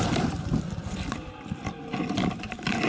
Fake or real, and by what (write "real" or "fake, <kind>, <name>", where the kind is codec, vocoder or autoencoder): real